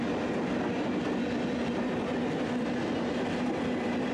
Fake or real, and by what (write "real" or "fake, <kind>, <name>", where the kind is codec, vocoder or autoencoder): real